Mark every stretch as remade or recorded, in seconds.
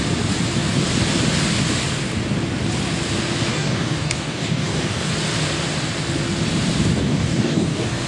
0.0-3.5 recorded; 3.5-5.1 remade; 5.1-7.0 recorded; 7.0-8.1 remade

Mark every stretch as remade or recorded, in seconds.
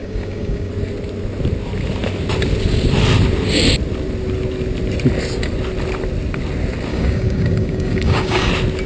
0.0-0.7 remade; 0.7-6.9 recorded; 6.9-8.5 remade; 8.5-8.9 recorded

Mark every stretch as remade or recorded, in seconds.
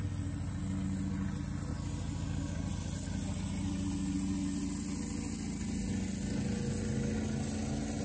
0.0-8.0 recorded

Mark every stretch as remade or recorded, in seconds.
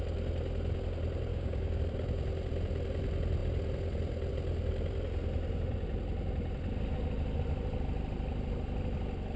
0.0-1.3 recorded; 1.3-1.8 remade; 1.8-9.4 recorded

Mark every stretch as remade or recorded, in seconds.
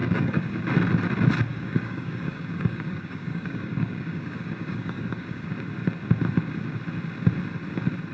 0.0-0.6 remade; 0.6-1.5 recorded; 1.5-5.5 remade; 5.5-8.1 recorded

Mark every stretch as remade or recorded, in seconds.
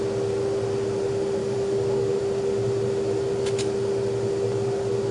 0.0-1.4 recorded; 1.4-2.2 remade; 2.2-5.1 recorded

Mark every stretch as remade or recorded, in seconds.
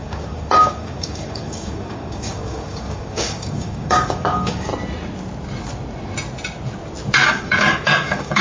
0.0-4.7 remade; 4.7-7.3 recorded; 7.3-8.4 remade